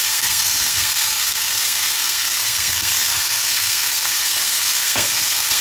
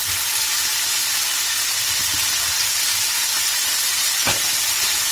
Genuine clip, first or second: second